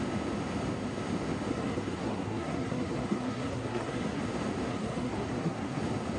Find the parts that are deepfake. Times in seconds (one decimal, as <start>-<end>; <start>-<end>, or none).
1.5-4.2; 4.7-5.8